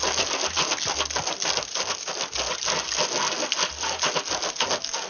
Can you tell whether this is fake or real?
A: real